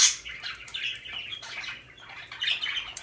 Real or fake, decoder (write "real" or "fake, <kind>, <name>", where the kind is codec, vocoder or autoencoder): real